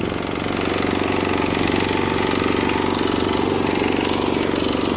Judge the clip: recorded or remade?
recorded